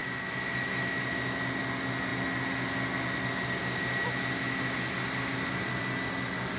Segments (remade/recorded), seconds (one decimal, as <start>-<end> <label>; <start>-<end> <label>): 0.0-6.6 recorded